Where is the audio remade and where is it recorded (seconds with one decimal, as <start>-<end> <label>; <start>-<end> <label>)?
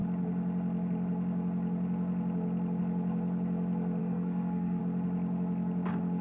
0.0-4.0 recorded; 4.0-4.8 remade; 4.8-6.2 recorded